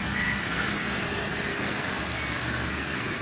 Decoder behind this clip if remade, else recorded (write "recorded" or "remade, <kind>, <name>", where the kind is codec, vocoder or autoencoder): remade, codec, SNAC